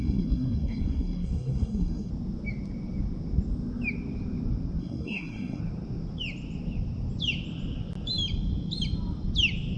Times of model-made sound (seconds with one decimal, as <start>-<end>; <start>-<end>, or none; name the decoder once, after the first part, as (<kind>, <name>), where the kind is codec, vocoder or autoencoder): 0.0-2.1 (codec, SNAC); 4.8-5.6